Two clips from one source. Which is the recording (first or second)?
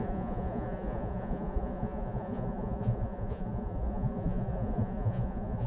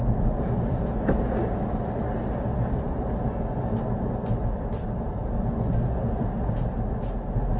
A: second